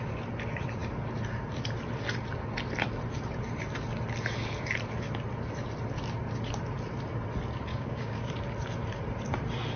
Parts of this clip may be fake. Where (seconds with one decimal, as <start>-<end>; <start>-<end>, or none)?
7.7-8.3